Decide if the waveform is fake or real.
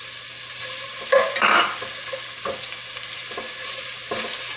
real